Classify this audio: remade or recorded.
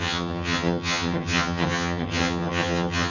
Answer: remade